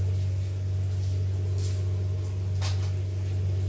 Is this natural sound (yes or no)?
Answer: yes